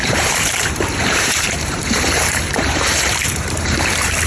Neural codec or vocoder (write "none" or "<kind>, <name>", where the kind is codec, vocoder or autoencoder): vocoder, BigVGAN v2